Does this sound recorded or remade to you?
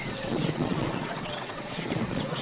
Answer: remade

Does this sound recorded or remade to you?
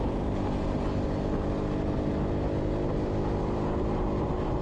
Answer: recorded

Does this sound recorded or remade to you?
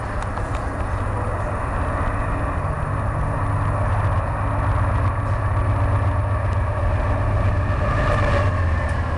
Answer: recorded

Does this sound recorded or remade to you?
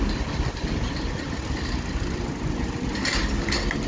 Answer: recorded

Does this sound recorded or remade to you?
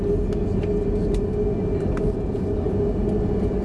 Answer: recorded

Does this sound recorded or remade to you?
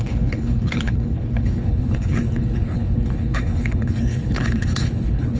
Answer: remade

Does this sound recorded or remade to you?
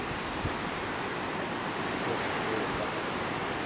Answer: recorded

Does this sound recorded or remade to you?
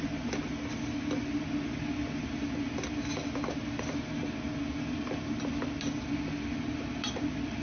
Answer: recorded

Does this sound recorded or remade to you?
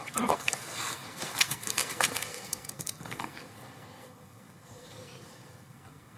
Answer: remade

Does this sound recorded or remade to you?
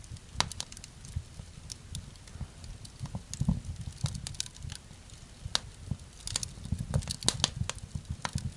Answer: recorded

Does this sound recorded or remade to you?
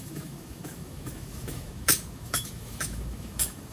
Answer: remade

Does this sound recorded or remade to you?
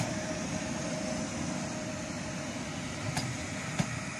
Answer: recorded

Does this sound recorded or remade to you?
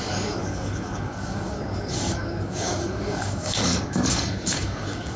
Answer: remade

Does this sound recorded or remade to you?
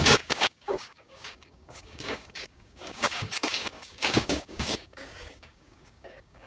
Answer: remade